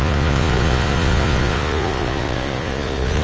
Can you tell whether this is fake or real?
fake